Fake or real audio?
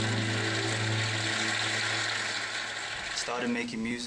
real